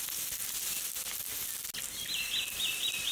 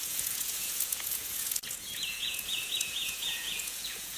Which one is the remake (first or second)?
second